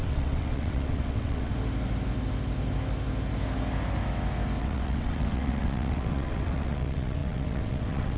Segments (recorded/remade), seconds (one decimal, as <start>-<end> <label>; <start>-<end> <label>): 0.0-1.5 remade; 1.5-4.6 recorded; 4.6-8.2 remade